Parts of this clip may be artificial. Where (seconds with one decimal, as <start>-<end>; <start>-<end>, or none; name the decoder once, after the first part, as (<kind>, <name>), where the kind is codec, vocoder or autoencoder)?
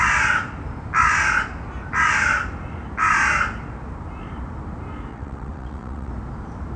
5.1-6.1 (vocoder, WaveNeXt)